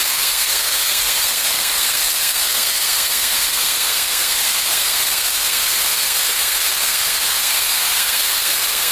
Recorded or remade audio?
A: remade